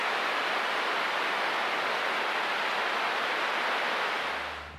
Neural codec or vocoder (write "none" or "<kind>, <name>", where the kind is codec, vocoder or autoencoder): none